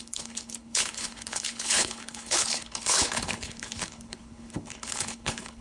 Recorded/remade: remade